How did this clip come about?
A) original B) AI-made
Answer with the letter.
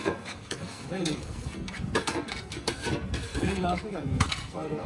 B